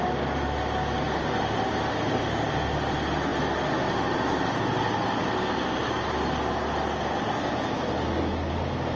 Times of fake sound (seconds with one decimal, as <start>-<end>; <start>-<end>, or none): none